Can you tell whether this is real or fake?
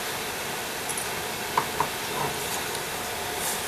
real